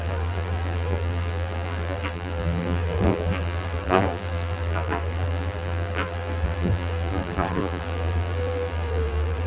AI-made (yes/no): yes